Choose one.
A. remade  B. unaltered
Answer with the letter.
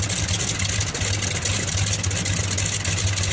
B